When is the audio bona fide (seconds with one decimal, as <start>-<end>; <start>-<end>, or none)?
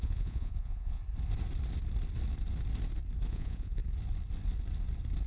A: 1.0-3.3; 3.8-5.3